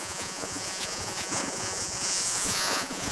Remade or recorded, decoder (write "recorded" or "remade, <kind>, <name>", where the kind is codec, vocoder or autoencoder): remade, vocoder, Vocos